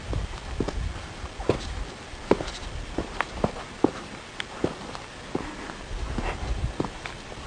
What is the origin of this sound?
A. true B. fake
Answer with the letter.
A